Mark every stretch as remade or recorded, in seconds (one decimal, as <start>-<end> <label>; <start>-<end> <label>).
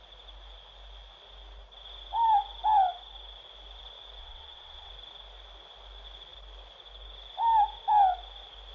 0.0-4.2 recorded; 4.2-4.9 remade; 4.9-8.7 recorded